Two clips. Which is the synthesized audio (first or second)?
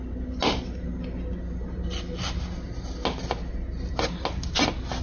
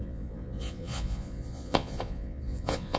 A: second